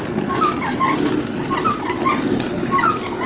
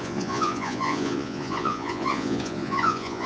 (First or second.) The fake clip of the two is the second